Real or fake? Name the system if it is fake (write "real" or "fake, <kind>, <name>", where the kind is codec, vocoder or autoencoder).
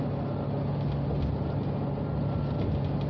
real